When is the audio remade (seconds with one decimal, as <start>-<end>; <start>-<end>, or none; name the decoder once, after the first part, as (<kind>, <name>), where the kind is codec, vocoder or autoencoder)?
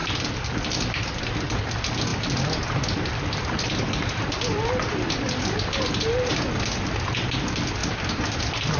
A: 0.0-7.8 (vocoder, BigVGAN v2); 8.4-8.8